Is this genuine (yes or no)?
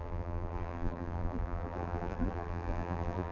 no